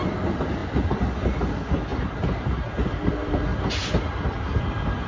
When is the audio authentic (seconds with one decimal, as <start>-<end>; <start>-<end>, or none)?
0.0-5.1